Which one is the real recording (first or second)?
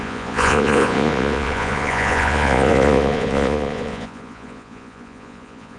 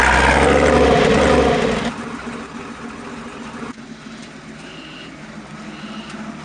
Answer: second